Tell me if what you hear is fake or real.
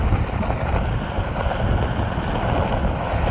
real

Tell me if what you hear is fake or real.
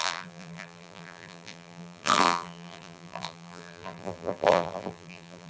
fake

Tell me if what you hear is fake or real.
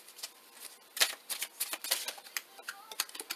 real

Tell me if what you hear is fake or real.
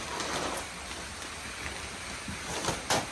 real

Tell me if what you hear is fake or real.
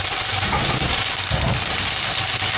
real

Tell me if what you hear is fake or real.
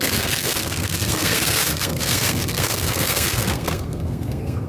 fake